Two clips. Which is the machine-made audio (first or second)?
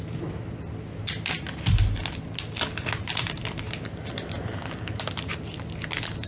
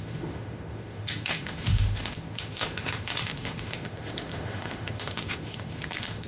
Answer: second